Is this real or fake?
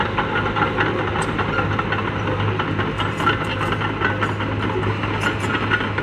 real